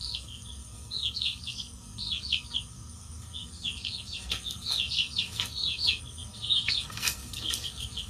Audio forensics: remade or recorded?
remade